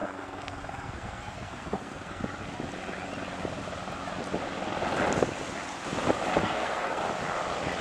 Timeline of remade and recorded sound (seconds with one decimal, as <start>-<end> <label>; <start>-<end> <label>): 0.0-2.2 remade; 2.2-6.4 recorded; 6.4-7.0 remade; 7.0-7.8 recorded